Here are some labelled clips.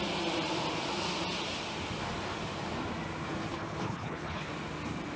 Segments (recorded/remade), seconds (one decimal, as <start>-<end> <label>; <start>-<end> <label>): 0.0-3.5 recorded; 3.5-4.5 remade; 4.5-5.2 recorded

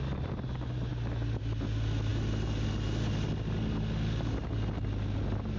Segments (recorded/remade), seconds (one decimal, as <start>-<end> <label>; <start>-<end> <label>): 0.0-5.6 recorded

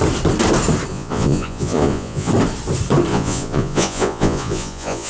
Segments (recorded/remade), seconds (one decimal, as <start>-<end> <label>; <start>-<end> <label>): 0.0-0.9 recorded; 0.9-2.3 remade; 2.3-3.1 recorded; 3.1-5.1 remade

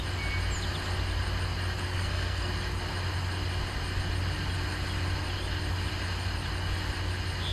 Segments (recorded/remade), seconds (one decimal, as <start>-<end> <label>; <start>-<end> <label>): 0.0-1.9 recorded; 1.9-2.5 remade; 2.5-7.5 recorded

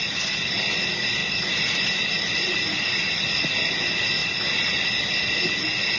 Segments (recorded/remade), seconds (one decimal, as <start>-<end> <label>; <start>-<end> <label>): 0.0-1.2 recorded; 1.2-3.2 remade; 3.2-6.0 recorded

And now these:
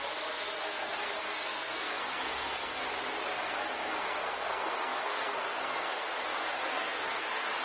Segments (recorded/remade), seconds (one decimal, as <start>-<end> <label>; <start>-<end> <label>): 0.0-2.8 remade; 2.8-3.4 recorded; 3.4-7.6 remade

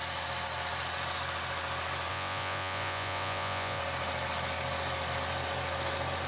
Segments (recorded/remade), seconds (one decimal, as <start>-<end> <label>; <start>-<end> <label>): 0.0-2.1 recorded; 2.1-3.8 remade; 3.8-6.3 recorded